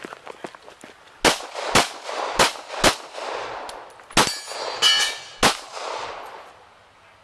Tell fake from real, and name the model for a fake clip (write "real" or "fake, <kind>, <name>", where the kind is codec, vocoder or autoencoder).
real